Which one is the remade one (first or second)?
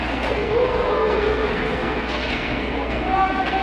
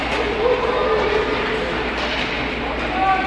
first